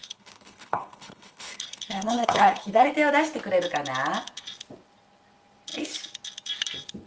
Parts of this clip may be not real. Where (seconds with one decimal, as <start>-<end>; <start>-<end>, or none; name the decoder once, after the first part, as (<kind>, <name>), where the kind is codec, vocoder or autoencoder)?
0.0-2.9 (codec, HILCodec)